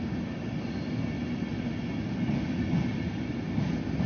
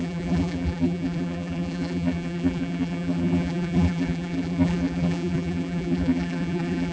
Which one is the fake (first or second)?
second